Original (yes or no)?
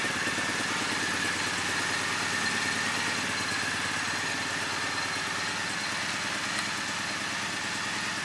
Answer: yes